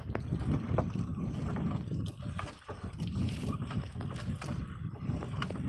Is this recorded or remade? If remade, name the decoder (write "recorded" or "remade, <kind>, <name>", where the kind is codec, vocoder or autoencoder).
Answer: recorded